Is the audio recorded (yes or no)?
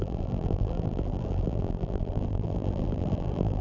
no